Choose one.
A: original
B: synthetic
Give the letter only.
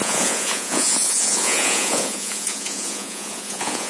B